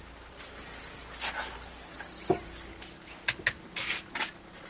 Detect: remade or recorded recorded